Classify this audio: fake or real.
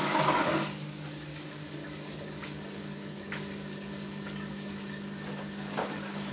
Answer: fake